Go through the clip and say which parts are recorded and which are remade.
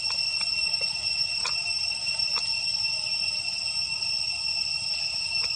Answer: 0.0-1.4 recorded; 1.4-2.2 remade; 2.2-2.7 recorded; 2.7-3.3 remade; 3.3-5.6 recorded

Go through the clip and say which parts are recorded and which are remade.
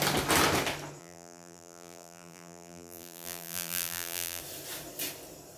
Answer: 0.0-1.0 recorded; 1.0-4.4 remade; 4.4-5.6 recorded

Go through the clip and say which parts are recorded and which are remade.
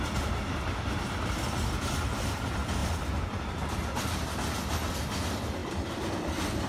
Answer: 0.0-5.6 recorded; 5.6-6.7 remade